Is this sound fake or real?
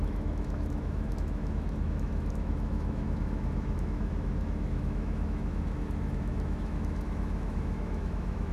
fake